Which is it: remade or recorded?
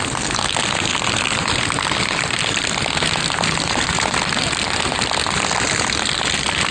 remade